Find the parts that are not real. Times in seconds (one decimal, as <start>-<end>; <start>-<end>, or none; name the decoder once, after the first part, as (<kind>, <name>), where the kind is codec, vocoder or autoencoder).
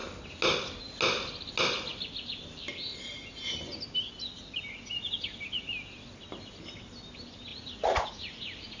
7.5-8.8 (vocoder, Vocos)